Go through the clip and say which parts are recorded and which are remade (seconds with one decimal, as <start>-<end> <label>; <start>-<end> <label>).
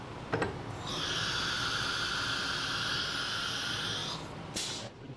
0.0-5.2 recorded